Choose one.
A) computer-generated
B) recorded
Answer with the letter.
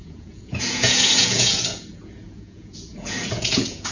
A